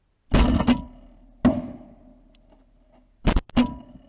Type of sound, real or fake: real